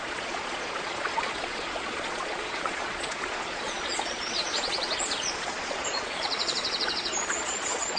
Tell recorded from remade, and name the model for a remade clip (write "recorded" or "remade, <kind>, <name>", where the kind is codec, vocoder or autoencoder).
remade, vocoder, Vocos